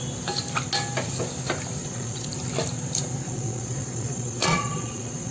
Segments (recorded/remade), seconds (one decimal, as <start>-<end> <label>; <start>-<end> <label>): 0.0-1.8 recorded; 1.8-2.3 remade; 2.3-3.2 recorded; 3.2-5.3 remade